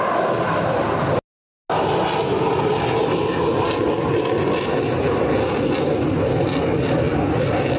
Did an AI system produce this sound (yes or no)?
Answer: no